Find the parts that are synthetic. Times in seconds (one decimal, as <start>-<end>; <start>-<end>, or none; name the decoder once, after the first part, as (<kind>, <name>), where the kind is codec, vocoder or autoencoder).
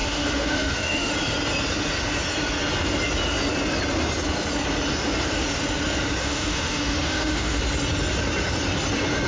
0.0-1.1 (autoencoder, DAC-VAE); 6.2-7.6